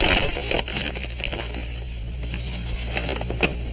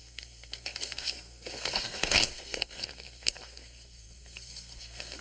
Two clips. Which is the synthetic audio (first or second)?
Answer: second